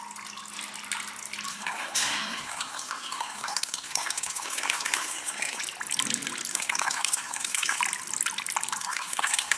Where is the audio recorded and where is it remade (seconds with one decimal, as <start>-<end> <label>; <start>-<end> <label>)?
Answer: 0.0-1.5 recorded; 1.5-5.6 remade; 5.6-6.5 recorded; 6.5-7.8 remade; 7.8-8.8 recorded; 8.8-9.6 remade